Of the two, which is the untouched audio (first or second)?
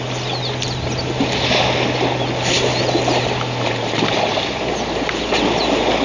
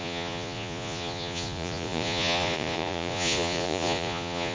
first